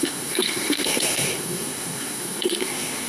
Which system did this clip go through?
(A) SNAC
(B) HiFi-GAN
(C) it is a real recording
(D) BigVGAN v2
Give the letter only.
A